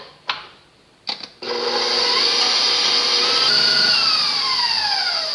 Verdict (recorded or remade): recorded